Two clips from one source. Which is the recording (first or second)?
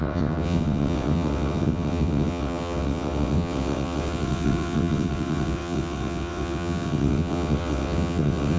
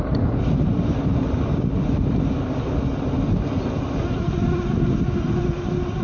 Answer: second